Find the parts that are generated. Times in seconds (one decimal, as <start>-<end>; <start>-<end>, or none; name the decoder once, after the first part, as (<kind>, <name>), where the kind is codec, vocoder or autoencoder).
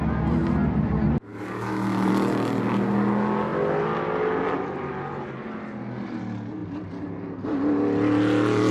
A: 1.3-2.1 (codec, DAC)